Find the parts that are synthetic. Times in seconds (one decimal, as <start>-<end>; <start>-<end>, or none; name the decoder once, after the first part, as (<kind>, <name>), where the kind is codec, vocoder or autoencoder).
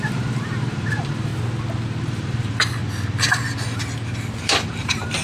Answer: 0.0-1.3 (vocoder, BigVGAN v2); 2.0-2.8; 4.6-5.2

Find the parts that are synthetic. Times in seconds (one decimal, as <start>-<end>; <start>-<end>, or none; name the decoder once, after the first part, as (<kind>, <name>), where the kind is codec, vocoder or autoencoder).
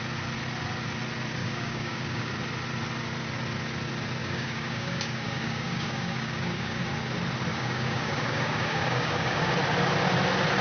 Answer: 1.4-2.3 (codec, DAC); 4.2-6.8; 7.5-9.5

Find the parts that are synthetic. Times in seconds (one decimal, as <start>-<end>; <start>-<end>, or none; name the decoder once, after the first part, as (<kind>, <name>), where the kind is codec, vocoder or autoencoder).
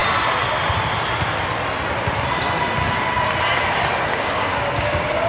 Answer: 4.1-5.3 (codec, DAC)